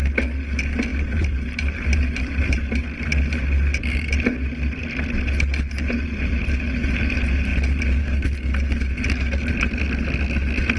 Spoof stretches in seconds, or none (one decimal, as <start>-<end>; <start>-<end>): 0.9-2.6